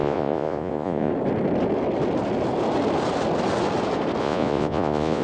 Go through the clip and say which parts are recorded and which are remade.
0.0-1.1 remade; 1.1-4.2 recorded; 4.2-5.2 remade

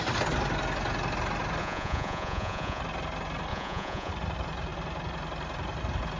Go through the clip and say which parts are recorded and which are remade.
0.0-1.6 recorded; 1.6-2.8 remade; 2.8-3.5 recorded; 3.5-4.1 remade; 4.1-6.2 recorded

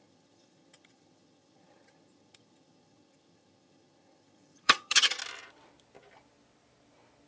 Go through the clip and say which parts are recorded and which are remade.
0.0-5.2 remade; 5.2-7.3 recorded

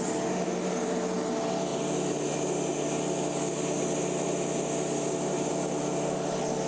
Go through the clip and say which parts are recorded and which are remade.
0.0-6.7 recorded